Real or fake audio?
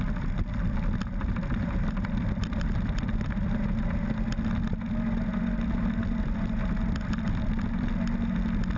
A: real